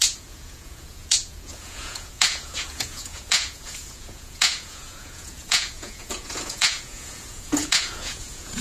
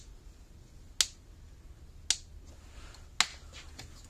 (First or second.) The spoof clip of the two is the first